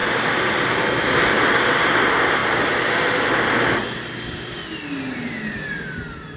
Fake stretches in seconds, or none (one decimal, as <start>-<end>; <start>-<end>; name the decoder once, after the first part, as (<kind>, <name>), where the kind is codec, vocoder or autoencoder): none